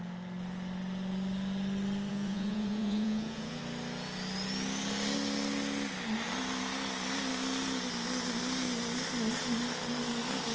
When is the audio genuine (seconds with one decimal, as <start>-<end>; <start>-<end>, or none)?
0.0-2.1; 3.6-10.5